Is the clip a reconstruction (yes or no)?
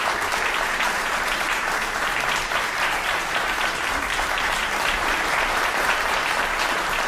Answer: yes